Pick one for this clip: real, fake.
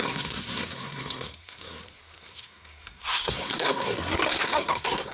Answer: fake